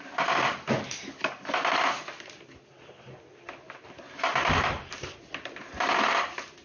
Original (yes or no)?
yes